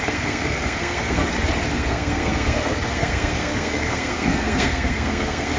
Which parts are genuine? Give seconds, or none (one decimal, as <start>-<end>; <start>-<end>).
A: 1.2-1.7